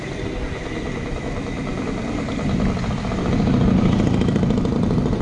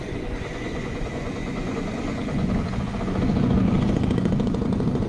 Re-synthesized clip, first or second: second